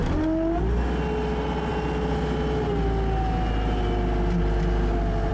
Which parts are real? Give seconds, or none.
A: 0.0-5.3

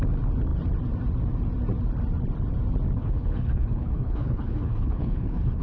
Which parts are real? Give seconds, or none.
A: 0.0-3.0

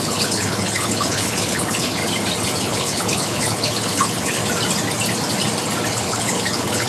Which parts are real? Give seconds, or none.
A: 2.0-2.6; 4.4-5.9

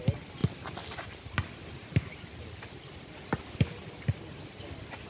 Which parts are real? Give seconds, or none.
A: 0.0-5.1

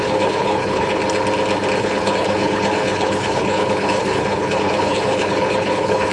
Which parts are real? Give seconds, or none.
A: 1.0-1.8

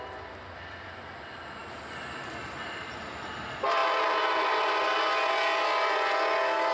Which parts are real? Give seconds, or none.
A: 0.0-6.7

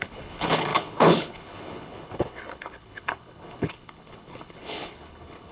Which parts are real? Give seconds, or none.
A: none